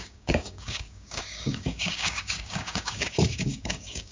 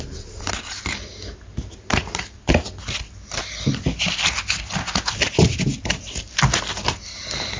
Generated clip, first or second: first